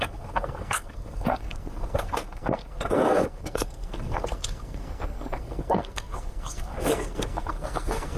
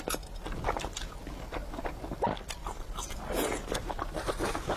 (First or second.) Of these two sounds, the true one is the second